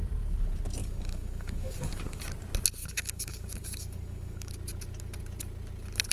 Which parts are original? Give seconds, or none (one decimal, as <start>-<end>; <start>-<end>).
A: 0.0-0.8; 2.2-2.8; 4.5-6.1